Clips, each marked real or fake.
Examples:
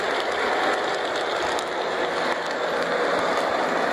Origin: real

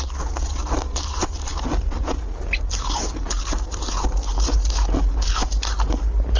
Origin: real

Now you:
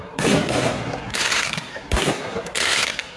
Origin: fake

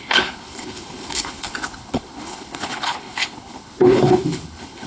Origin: fake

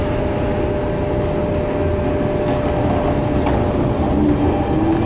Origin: real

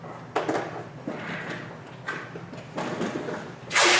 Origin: real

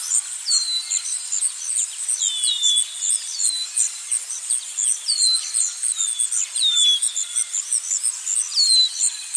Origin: real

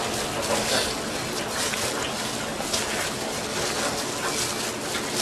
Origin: real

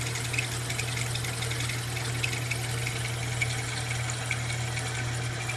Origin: real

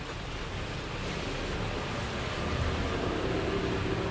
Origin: real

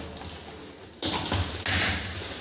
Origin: real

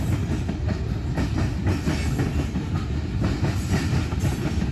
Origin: real